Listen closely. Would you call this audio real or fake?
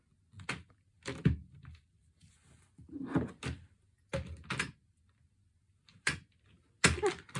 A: real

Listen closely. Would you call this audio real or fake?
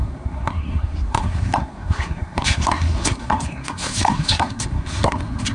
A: fake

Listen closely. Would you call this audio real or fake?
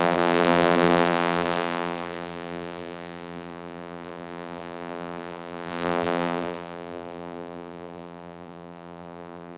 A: fake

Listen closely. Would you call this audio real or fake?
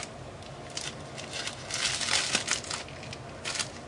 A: real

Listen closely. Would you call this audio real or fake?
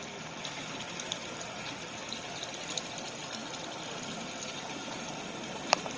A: real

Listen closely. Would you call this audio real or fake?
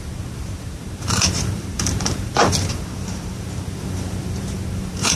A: fake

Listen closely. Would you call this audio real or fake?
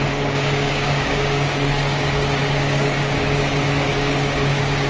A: fake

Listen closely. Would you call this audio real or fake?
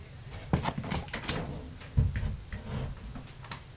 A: real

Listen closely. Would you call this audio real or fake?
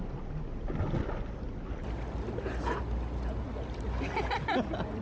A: real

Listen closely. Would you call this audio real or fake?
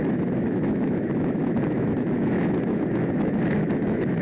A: fake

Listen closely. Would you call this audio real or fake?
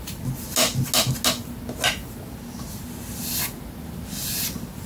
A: real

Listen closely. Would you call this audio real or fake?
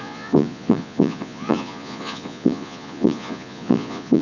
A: fake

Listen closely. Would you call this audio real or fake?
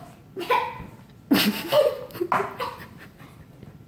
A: real